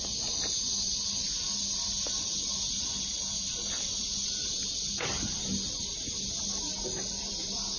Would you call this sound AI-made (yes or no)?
no